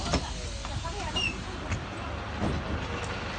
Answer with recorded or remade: recorded